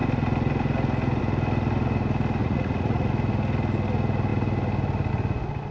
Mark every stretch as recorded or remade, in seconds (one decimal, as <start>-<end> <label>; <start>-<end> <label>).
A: 0.0-2.4 recorded; 2.4-3.1 remade; 3.1-5.7 recorded